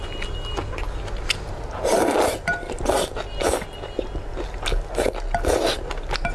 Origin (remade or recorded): recorded